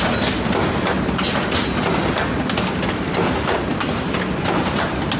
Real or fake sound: real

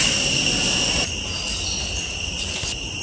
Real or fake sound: real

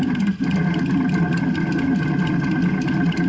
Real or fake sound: real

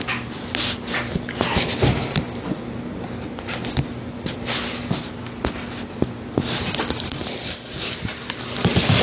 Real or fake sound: real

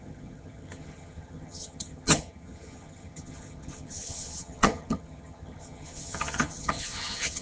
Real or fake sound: fake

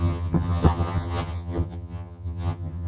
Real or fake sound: fake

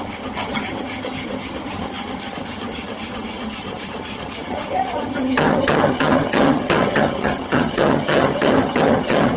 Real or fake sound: fake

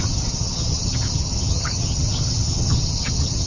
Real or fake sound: fake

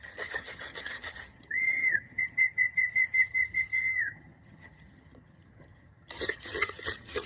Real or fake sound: fake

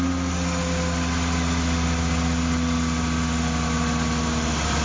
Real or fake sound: real